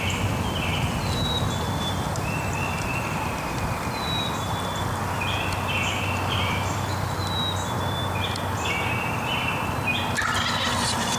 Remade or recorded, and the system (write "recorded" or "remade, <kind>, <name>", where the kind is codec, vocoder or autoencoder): recorded